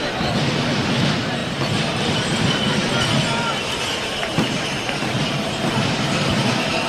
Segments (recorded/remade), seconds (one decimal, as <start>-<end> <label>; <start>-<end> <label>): 0.0-6.9 remade